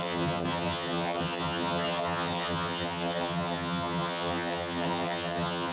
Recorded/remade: remade